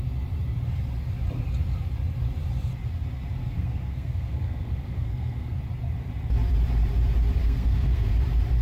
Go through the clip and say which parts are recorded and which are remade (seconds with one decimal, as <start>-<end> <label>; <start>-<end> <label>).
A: 0.0-3.4 recorded; 3.4-5.6 remade; 5.6-7.4 recorded; 7.4-8.1 remade; 8.1-8.6 recorded